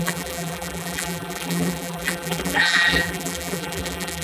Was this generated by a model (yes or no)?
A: yes